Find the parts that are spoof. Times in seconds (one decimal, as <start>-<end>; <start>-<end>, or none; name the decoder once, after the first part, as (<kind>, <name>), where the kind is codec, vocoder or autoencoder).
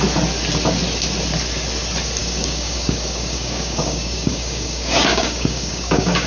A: 2.2-6.3 (codec, DAC)